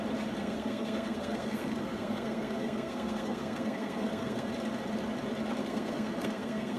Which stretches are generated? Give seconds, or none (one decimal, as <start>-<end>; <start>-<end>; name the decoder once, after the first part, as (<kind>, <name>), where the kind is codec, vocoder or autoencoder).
0.4-4.5 (codec, SNAC); 5.6-6.8